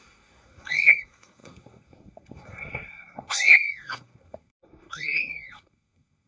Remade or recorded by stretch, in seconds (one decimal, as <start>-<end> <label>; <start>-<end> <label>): 0.0-6.3 remade